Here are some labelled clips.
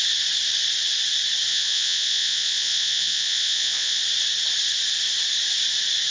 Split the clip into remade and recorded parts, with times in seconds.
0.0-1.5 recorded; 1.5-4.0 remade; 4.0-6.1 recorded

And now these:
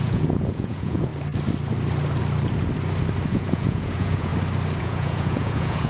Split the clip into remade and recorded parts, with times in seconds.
0.0-1.1 remade; 1.1-3.3 recorded; 3.3-4.3 remade; 4.3-4.8 recorded; 4.8-5.9 remade

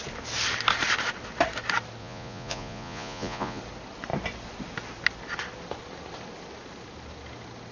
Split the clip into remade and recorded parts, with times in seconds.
0.0-2.0 recorded; 2.0-3.6 remade; 3.6-7.7 recorded

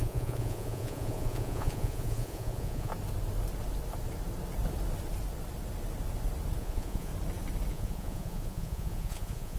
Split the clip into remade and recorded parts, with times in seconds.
0.0-2.9 remade; 2.9-6.6 recorded; 6.6-7.1 remade; 7.1-7.7 recorded; 7.7-9.6 remade